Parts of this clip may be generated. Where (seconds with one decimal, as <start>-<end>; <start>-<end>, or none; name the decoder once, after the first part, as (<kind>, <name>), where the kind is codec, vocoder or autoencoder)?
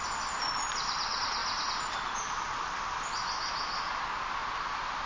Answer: none